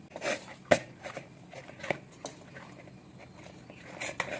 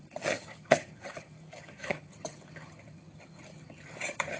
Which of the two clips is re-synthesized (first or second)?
second